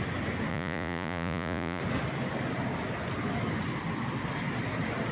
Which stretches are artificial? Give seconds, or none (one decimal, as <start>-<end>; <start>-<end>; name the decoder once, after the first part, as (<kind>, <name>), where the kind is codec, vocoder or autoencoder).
0.5-1.8 (vocoder, Vocos)